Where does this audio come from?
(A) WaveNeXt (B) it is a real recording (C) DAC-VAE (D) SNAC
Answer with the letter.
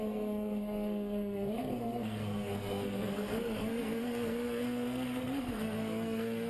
D